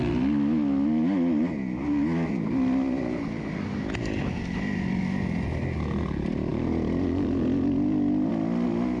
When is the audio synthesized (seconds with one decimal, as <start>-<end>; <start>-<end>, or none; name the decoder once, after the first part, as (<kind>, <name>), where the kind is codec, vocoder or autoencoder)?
none